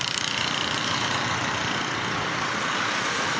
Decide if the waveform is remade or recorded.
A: recorded